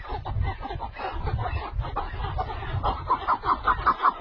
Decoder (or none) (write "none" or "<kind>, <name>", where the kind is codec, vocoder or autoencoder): none